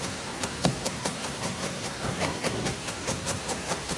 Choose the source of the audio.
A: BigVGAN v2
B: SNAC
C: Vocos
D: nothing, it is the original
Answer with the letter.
B